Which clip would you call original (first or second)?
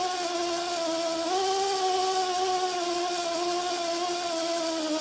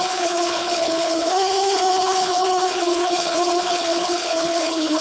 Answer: first